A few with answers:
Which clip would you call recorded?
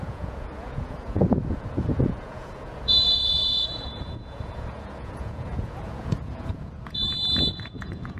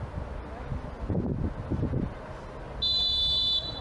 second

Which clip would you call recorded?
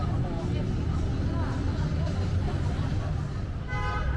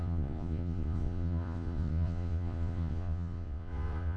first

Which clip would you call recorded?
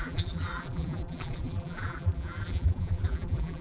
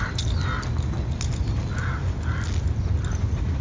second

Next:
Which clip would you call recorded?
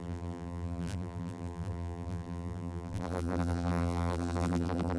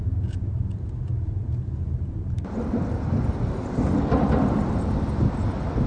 second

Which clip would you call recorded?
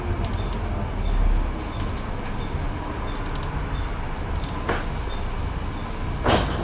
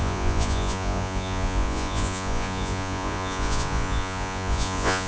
first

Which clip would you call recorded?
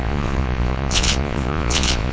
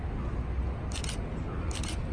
second